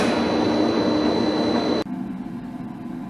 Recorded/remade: recorded